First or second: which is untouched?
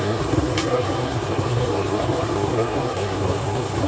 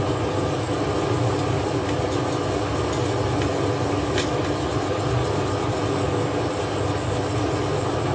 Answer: second